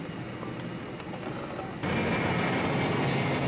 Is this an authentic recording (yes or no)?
yes